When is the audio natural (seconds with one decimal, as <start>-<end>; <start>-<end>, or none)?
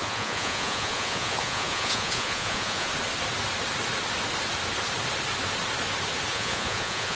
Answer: 2.9-6.3